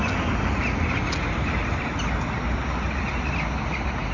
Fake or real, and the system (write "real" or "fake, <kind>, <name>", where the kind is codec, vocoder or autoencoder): real